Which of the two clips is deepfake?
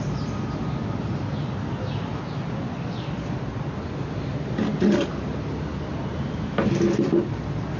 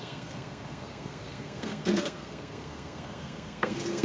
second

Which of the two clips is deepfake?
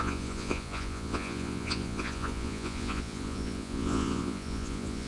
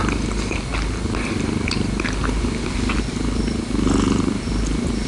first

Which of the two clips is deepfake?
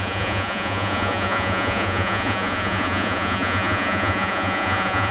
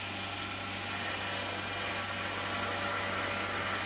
first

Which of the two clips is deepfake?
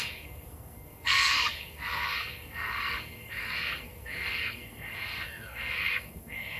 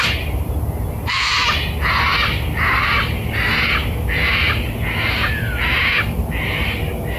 first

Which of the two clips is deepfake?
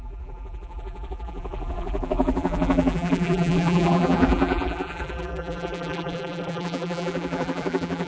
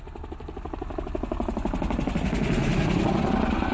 first